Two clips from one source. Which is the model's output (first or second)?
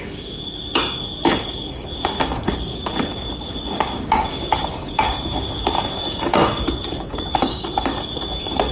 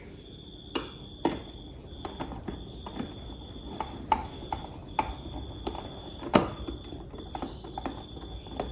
first